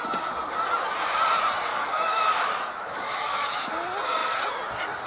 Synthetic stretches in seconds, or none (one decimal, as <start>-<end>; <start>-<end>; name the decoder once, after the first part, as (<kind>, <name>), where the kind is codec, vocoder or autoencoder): 1.7-3.7 (autoencoder, DAC-VAE)